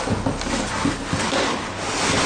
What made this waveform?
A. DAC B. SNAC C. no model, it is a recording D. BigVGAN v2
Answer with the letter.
C